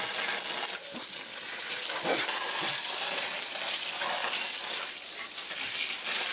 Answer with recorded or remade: recorded